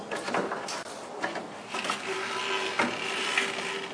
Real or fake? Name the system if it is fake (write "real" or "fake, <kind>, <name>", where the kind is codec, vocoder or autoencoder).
real